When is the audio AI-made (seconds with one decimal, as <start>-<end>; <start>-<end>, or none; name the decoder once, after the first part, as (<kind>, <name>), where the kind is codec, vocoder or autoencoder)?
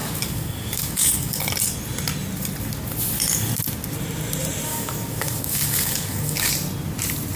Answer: 0.0-1.4 (codec, DAC); 4.7-6.5